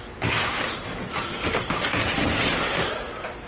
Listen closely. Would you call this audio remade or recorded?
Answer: recorded